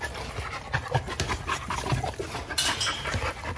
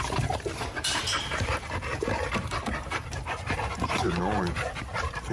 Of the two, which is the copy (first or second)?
second